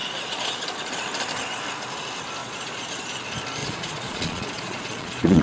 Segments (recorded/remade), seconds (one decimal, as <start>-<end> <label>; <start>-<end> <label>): 0.0-0.5 remade; 0.5-2.4 recorded; 2.4-2.9 remade; 2.9-3.6 recorded; 3.6-5.4 remade